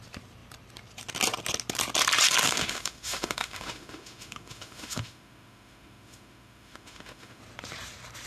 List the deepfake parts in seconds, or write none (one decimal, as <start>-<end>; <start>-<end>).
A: 2.4-7.4

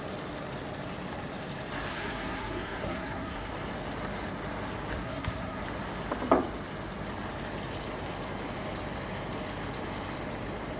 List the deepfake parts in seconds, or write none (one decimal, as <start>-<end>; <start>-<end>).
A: 1.9-3.5; 5.0-5.6

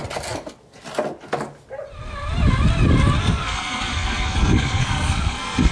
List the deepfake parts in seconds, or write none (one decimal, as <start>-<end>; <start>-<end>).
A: 3.2-5.7

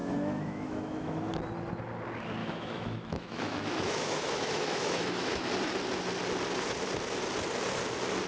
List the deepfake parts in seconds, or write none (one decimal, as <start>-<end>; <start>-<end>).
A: 0.0-1.3; 2.4-5.5

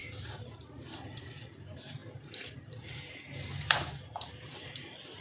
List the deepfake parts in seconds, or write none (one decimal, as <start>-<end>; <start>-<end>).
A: 0.0-5.2

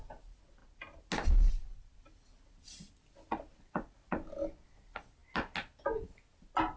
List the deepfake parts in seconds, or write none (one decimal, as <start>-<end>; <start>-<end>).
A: none

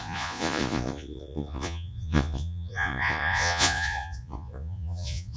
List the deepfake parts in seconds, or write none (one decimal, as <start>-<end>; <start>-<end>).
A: 0.0-5.4

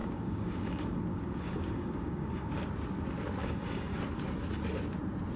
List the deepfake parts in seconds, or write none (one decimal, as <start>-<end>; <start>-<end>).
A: 0.0-2.7; 3.4-4.0